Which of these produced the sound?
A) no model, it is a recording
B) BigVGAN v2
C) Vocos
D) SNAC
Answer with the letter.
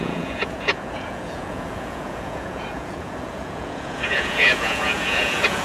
C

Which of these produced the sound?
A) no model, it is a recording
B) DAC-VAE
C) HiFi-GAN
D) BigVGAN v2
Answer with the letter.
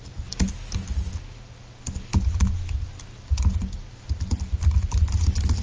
A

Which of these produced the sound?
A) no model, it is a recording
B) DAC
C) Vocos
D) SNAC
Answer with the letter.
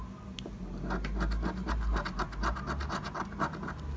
A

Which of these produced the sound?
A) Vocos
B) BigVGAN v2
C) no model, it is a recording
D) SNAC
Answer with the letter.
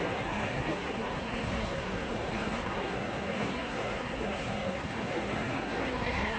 D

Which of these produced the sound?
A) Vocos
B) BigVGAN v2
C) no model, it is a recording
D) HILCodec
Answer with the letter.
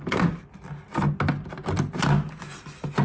C